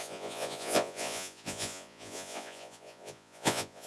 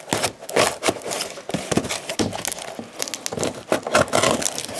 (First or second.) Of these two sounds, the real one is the second